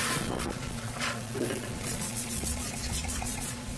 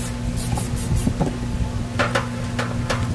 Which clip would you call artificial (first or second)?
first